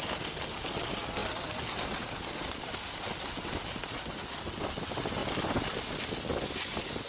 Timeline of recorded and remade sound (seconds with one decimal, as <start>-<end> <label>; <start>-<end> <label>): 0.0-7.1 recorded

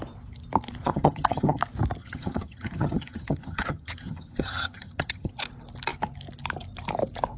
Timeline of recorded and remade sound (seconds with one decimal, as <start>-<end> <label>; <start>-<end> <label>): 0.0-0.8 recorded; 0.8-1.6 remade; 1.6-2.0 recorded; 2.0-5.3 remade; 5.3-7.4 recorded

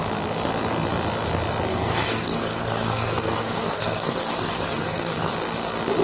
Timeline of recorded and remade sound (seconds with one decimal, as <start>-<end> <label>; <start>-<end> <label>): 0.0-1.7 recorded; 1.7-5.3 remade; 5.3-6.0 recorded

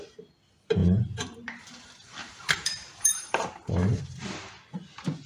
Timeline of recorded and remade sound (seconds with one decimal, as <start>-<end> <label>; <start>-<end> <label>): 0.0-0.8 recorded; 0.8-4.0 remade; 4.0-5.3 recorded